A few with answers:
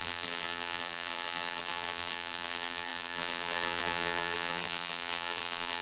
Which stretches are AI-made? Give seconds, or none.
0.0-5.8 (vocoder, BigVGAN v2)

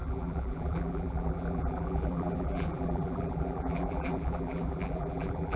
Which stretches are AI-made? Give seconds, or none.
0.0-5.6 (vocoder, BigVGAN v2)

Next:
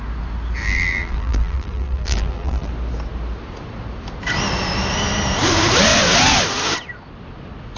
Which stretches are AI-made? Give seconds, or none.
0.6-2.7 (vocoder, BigVGAN v2)